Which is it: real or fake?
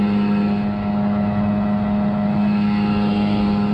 real